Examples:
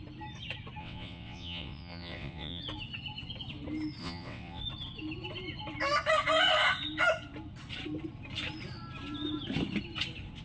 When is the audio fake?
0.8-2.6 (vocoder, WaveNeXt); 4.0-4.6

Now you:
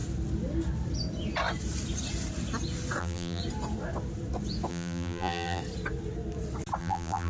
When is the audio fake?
3.0-3.4 (vocoder, BigVGAN v2); 4.7-5.6; 6.8-7.3

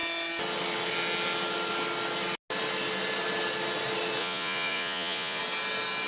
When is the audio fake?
4.2-5.4 (vocoder, Vocos)

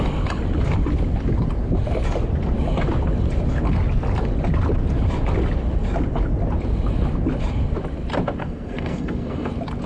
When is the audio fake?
8.4-9.5 (codec, SNAC)

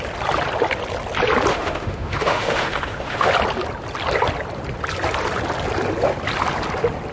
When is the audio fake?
1.5-3.3 (autoencoder, DAC-VAE)